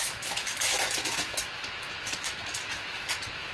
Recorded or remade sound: remade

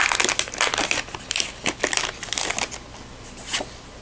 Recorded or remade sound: recorded